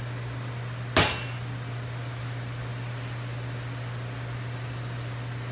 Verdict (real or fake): real